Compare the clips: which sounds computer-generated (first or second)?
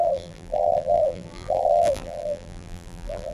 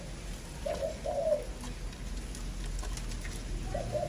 first